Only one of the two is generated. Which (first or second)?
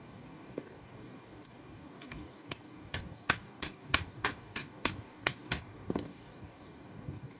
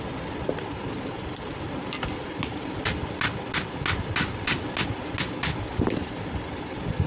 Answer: first